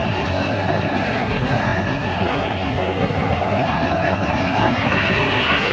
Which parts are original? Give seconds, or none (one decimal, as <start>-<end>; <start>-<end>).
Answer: none